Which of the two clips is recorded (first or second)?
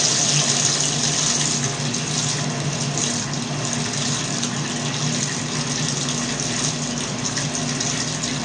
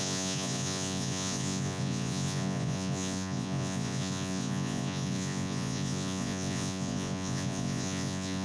first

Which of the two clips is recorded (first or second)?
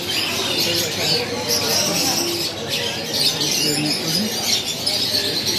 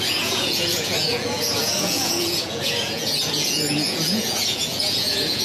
first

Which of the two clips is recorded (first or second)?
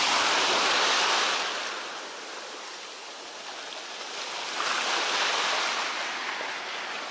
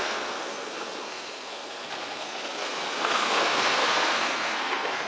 first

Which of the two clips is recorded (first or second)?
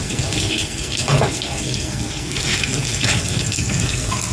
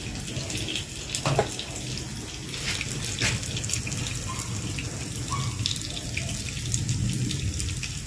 second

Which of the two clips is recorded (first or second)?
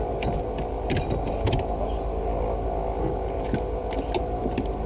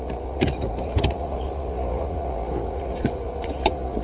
first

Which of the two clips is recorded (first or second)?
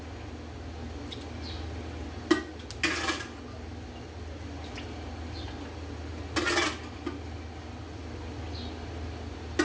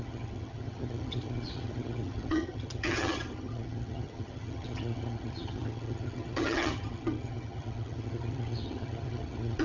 first